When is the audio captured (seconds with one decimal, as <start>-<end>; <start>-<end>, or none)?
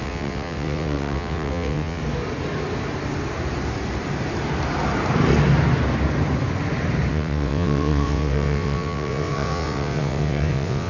2.0-7.1